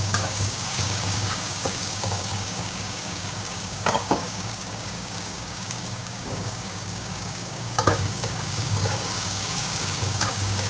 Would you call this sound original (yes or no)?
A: no